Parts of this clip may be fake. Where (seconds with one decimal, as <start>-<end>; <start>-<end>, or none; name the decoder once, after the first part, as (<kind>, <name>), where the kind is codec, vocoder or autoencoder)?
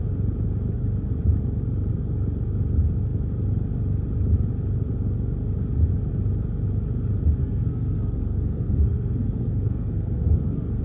7.4-10.8 (codec, SNAC)